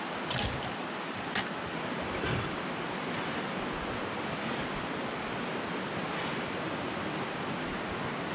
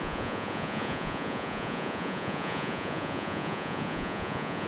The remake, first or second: second